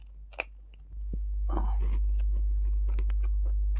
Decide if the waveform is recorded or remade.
recorded